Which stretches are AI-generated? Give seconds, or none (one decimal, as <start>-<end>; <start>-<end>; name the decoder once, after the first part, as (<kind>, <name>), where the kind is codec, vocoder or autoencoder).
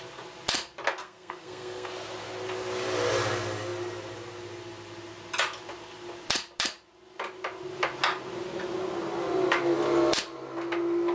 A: 1.0-1.9 (codec, SNAC)